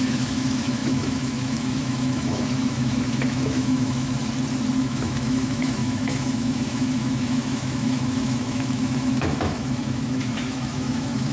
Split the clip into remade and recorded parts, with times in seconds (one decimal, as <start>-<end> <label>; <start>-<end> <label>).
0.0-4.2 remade; 4.2-4.8 recorded; 4.8-11.3 remade